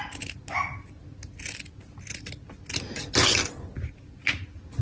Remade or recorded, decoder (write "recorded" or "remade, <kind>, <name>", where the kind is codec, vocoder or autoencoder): recorded